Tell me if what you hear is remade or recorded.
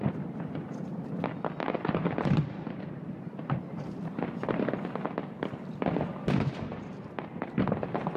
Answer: recorded